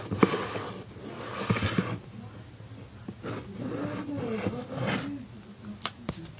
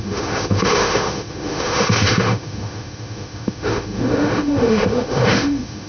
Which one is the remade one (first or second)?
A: second